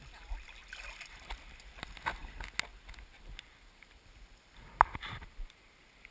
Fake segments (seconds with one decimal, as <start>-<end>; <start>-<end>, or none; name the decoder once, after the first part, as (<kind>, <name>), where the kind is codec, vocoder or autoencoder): none